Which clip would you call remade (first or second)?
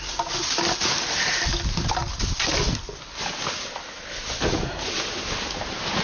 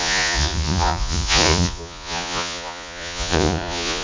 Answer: second